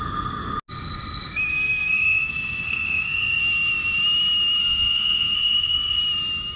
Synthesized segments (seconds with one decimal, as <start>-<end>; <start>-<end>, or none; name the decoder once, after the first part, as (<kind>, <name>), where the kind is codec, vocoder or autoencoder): 1.5-3.4 (codec, SNAC); 4.6-6.0